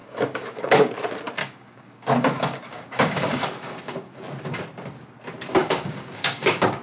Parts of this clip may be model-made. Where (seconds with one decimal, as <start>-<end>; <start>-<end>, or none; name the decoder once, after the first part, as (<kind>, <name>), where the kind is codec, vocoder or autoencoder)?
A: 0.0-0.9 (codec, DAC); 1.4-4.1; 5.6-6.8